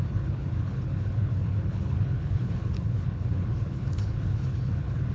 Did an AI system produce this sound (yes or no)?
yes